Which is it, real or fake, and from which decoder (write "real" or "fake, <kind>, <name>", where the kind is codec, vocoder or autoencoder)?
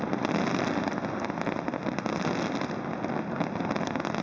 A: real